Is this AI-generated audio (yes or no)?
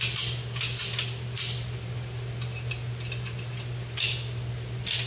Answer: no